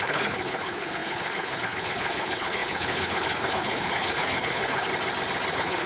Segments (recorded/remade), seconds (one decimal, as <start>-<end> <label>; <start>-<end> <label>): 0.0-4.9 remade; 4.9-5.5 recorded; 5.5-5.9 remade